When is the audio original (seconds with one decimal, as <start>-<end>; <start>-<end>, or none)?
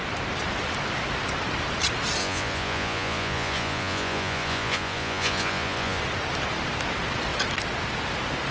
0.0-2.2; 6.0-8.5